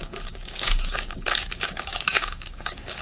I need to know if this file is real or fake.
fake